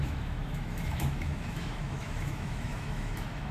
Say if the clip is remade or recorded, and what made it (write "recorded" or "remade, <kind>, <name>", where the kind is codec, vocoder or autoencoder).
remade, autoencoder, DAC-VAE